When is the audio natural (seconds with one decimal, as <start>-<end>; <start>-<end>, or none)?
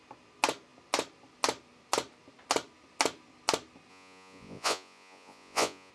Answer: 0.0-3.9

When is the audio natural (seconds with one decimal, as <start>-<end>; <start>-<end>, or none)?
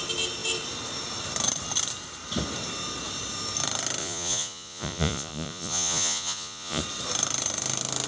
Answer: 0.0-4.0; 6.8-8.1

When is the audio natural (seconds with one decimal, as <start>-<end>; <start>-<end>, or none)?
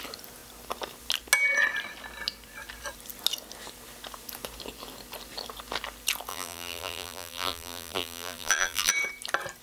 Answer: 0.0-6.3; 8.9-9.6